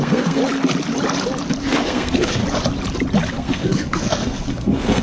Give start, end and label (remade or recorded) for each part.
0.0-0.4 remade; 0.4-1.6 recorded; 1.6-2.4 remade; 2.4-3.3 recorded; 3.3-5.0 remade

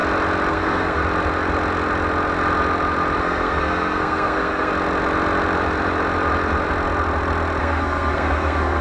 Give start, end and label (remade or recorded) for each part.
0.0-0.5 recorded; 0.5-1.0 remade; 1.0-3.2 recorded; 3.2-4.7 remade; 4.7-7.6 recorded; 7.6-8.8 remade

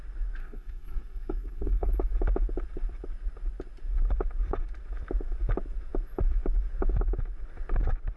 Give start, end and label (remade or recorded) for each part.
0.0-0.4 recorded; 0.4-1.9 remade; 1.9-8.2 recorded

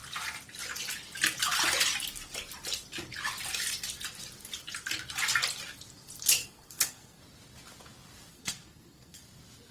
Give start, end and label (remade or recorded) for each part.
0.0-6.4 recorded; 6.4-7.2 remade; 7.2-8.3 recorded; 8.3-9.2 remade; 9.2-9.7 recorded

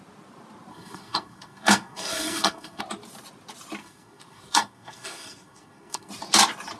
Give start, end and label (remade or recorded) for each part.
0.0-0.7 recorded; 0.7-2.8 remade; 2.8-3.8 recorded; 3.8-6.1 remade; 6.1-6.8 recorded